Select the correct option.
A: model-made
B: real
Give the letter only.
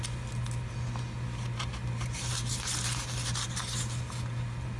B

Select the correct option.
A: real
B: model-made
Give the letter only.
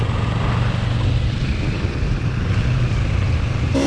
A